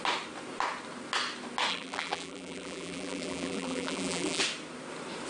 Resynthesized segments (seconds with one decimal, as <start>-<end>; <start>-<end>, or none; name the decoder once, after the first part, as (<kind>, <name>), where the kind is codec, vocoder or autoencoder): 1.7-4.4 (vocoder, BigVGAN v2)